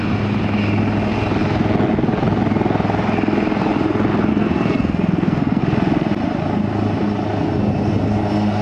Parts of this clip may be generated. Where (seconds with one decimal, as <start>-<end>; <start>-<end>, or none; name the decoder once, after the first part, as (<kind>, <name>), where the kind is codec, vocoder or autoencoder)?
4.3-5.6 (codec, SNAC)